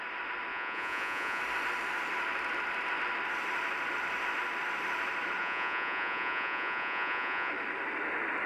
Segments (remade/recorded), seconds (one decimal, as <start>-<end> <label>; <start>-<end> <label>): 0.0-0.5 recorded; 0.5-1.4 remade; 1.4-5.4 recorded; 5.4-7.5 remade; 7.5-8.5 recorded